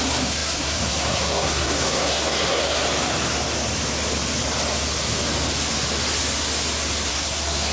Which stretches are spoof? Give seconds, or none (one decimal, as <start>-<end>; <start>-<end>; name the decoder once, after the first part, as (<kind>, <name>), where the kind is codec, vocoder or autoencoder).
0.0-2.6 (codec, SNAC); 7.1-7.7